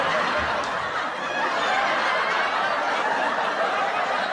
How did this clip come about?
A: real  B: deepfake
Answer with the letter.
A